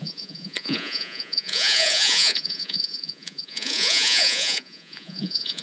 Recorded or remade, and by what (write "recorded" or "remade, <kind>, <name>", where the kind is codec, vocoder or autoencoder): remade, vocoder, Vocos